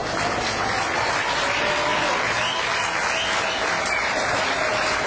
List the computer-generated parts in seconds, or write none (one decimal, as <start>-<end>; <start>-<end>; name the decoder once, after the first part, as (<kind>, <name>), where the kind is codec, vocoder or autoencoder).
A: 0.7-1.9 (vocoder, BigVGAN v2); 3.8-5.1